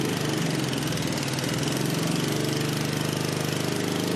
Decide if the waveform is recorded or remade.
recorded